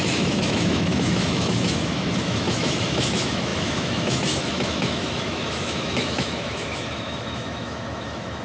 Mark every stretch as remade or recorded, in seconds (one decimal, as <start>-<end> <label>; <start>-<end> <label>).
0.0-8.4 remade